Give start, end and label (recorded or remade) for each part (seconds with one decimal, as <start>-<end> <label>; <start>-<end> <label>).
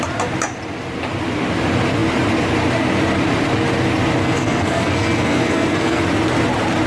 0.0-4.2 recorded; 4.2-6.0 remade; 6.0-6.9 recorded